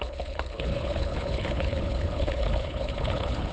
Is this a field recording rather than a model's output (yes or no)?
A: no